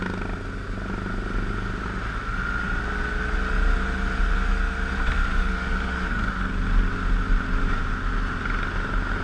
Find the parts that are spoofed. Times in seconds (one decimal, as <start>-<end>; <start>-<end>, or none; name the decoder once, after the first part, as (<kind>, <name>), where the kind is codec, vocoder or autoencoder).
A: 5.3-6.4 (codec, DAC)